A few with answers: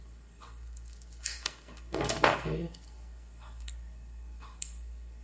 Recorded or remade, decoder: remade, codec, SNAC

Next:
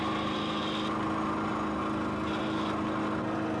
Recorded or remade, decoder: recorded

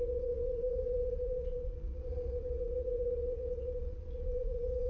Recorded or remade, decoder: remade, vocoder, Vocos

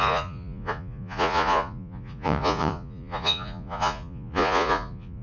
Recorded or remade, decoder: remade, vocoder, Vocos